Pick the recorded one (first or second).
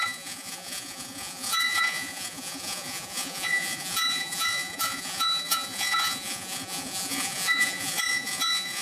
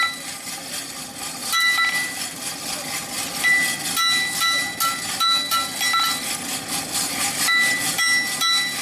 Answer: second